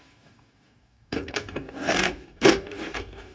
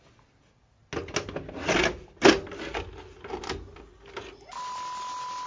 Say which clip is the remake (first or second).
first